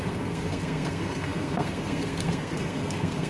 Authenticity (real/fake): fake